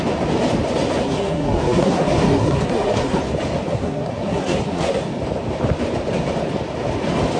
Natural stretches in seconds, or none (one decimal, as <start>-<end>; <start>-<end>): 0.0-1.0; 3.2-3.7; 5.0-7.4